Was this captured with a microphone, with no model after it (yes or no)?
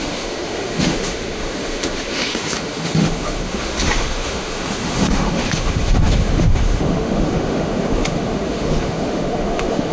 no